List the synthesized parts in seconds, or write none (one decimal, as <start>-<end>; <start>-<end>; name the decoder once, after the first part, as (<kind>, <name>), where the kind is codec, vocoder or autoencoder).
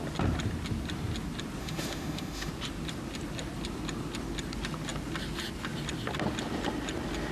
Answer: 1.6-2.5 (autoencoder, DAC-VAE)